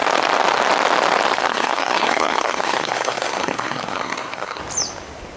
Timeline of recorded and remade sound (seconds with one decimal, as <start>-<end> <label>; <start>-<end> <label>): 0.0-1.4 recorded; 1.4-4.6 remade; 4.6-5.4 recorded